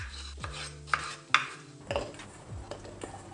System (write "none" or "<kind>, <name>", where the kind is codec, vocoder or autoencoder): none